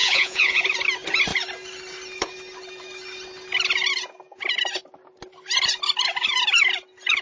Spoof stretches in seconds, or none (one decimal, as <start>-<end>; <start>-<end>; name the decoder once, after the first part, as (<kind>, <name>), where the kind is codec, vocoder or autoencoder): 0.0-0.6 (vocoder, Vocos)